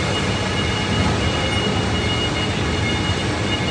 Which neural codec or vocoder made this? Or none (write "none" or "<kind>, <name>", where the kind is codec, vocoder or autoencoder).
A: none